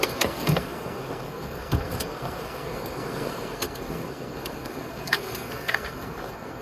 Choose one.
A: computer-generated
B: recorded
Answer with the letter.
A